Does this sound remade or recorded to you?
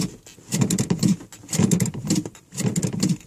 recorded